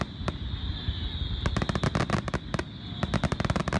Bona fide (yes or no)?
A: yes